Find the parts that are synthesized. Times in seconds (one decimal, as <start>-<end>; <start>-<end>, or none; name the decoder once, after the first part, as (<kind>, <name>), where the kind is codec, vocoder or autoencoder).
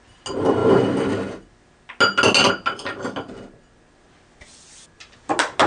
none